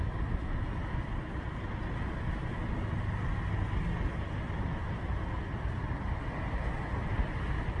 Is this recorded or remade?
recorded